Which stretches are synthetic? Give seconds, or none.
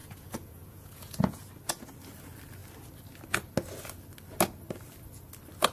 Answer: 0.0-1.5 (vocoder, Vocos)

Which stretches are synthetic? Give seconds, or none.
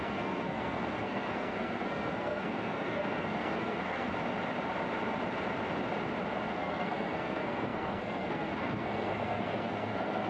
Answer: 0.0-4.1 (codec, SNAC); 6.5-10.3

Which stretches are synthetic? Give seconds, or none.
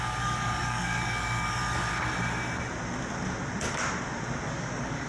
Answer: 0.0-1.6 (codec, DAC); 4.5-5.1